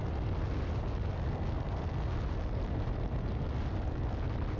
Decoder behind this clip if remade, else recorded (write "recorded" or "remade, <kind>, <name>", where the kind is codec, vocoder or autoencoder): recorded